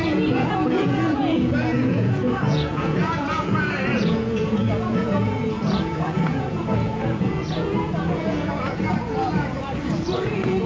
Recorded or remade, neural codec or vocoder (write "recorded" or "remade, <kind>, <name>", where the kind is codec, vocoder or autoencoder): remade, vocoder, Vocos